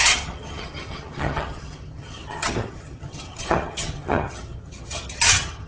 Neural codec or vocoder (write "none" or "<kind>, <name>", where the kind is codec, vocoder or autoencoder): vocoder, HiFi-GAN